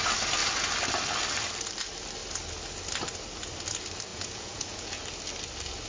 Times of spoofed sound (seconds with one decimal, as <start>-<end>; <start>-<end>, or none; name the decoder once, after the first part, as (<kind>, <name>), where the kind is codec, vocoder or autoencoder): 4.1-5.0 (vocoder, Vocos)

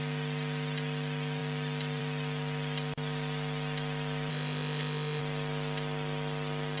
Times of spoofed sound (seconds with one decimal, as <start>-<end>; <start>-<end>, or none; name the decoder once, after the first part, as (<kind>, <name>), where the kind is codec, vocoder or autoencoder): 4.3-5.2 (autoencoder, DAC-VAE)

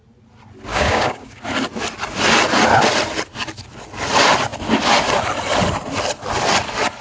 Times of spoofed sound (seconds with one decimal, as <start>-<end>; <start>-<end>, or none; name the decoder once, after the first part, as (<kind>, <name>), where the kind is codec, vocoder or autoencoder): 0.7-1.4 (codec, DAC)

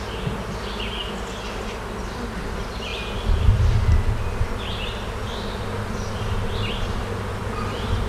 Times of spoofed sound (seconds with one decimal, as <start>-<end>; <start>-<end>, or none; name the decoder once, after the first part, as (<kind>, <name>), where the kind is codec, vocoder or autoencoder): none

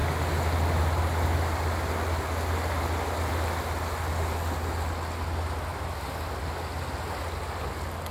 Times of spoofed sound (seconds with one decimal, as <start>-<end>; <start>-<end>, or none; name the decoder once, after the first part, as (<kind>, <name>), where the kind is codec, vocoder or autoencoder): none